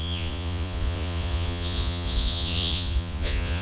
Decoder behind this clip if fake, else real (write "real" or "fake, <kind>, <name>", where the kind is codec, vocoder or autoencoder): fake, vocoder, Vocos